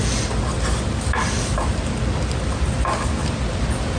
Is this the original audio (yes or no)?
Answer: yes